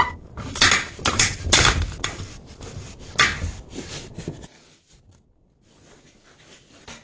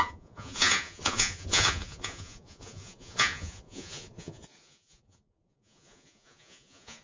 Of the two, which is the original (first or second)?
first